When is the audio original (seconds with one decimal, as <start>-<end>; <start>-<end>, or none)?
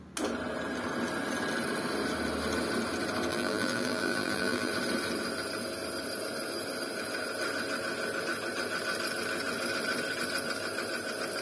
0.0-3.3; 4.7-11.4